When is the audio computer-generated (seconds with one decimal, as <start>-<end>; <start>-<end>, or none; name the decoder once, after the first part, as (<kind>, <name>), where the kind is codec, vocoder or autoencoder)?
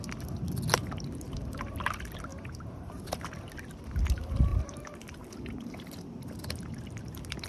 0.8-1.7 (vocoder, BigVGAN v2); 2.3-3.4; 4.5-7.5